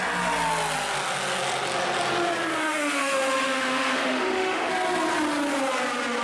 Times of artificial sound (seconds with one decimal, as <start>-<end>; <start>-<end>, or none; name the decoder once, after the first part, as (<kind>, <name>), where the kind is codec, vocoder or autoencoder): 2.6-4.7 (autoencoder, DAC-VAE)